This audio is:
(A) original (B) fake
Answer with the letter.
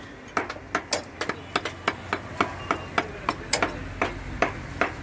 A